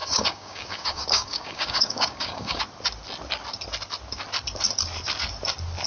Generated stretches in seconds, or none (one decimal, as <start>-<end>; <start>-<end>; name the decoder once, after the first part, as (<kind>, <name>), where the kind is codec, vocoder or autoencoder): 0.0-2.6 (codec, DAC)